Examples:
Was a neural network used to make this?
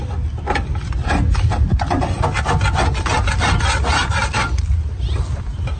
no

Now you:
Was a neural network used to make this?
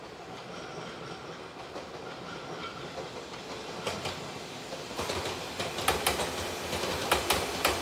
no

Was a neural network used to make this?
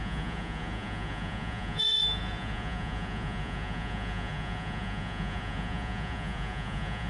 yes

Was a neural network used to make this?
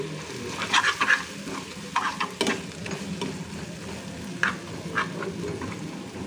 no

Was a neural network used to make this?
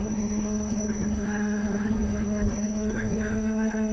yes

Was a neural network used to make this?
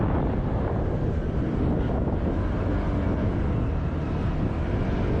no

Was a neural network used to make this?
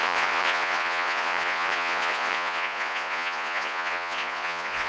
yes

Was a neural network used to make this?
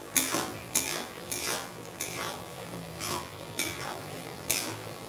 yes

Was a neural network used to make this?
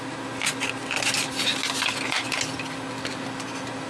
no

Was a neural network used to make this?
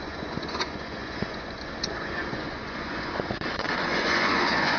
yes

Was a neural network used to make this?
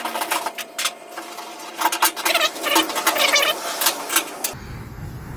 no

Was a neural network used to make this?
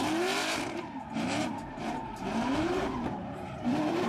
yes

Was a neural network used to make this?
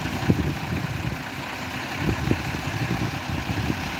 no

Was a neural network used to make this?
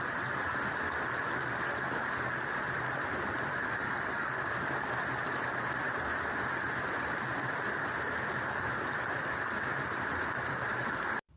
yes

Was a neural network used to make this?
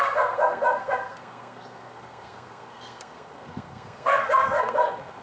yes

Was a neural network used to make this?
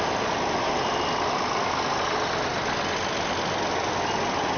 no